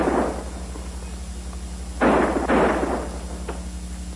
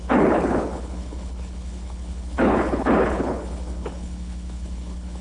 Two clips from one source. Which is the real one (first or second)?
first